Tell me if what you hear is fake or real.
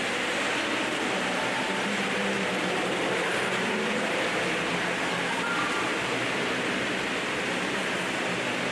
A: real